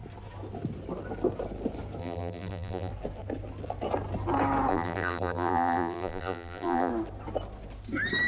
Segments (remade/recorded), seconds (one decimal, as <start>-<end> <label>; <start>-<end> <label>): 0.0-2.0 recorded; 2.0-2.9 remade; 2.9-4.7 recorded; 4.7-6.9 remade; 6.9-8.3 recorded